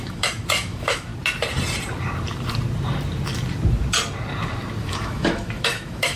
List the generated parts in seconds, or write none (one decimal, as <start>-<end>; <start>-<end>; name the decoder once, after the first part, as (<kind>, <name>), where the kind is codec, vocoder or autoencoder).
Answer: 0.0-1.1 (autoencoder, DAC-VAE); 4.8-6.2